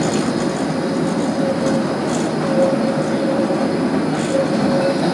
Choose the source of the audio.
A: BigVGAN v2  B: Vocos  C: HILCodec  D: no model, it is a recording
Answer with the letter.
D